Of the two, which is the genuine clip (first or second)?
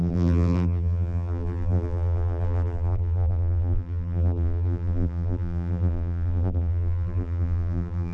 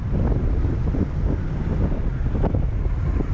second